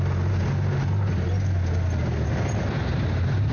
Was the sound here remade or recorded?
recorded